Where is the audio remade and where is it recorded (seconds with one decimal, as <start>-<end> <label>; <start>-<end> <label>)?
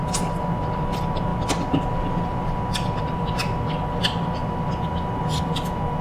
0.0-6.0 recorded